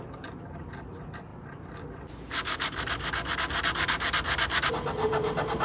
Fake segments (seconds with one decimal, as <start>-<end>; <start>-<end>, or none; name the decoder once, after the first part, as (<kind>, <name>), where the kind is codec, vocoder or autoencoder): none

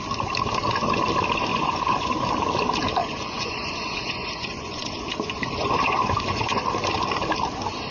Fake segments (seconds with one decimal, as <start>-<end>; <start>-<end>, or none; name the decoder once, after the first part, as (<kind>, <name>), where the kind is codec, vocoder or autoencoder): 1.5-2.1 (vocoder, Vocos); 3.0-6.6

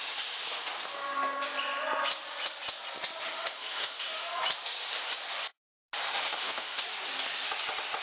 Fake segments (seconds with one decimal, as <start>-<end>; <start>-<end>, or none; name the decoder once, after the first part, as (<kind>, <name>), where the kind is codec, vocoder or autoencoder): 3.2-4.4 (autoencoder, DAC-VAE); 6.1-6.8

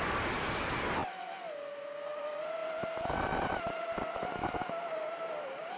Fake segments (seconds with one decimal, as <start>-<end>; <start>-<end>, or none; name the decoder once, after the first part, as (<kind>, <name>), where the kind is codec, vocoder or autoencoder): 0.0-1.0 (vocoder, BigVGAN v2); 2.2-5.8

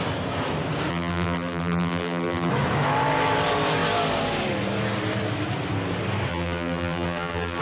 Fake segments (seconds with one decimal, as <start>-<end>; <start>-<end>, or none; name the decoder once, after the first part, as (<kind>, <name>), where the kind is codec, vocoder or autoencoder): 0.9-2.5 (vocoder, BigVGAN v2); 6.3-7.6

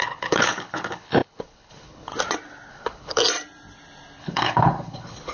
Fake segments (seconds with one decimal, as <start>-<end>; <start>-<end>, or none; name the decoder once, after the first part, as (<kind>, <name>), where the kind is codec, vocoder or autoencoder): 0.0-2.1 (codec, HILCodec); 2.7-3.2; 4.2-5.3

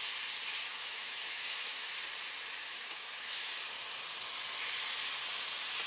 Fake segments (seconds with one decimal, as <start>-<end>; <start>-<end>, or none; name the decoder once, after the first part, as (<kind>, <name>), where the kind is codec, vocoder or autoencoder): 0.7-1.9 (autoencoder, DAC-VAE); 2.7-3.5

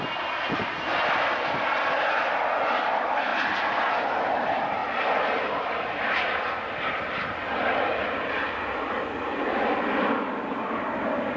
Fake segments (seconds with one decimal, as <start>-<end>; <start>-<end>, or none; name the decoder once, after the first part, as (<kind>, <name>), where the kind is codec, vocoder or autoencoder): none